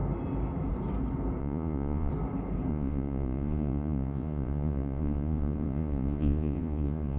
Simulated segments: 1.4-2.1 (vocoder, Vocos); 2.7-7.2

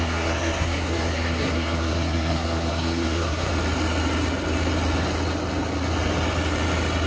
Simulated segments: 0.0-3.5 (codec, SNAC)

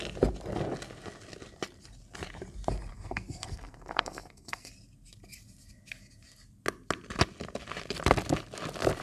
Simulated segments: 2.9-4.7 (codec, SNAC)

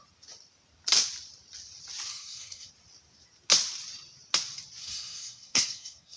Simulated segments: 2.1-2.7 (codec, SNAC); 4.8-6.2

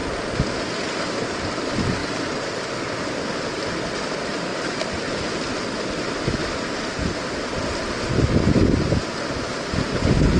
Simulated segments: 2.0-2.7 (vocoder, BigVGAN v2); 4.5-5.2; 9.5-10.4

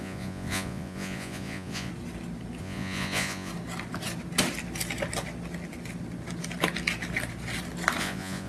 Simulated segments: 0.0-1.9 (vocoder, Vocos); 2.6-3.5; 8.0-8.5

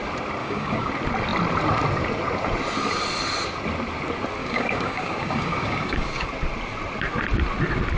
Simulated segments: 0.4-0.9 (codec, DAC); 4.4-6.3

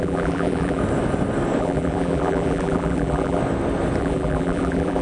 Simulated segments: 0.0-0.8 (vocoder, BigVGAN v2); 1.6-3.4; 4.0-5.0